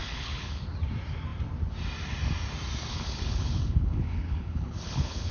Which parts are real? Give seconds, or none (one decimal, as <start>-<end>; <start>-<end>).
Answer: 0.6-2.9